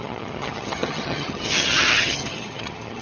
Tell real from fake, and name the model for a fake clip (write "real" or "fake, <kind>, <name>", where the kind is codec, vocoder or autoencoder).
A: fake, vocoder, HiFi-GAN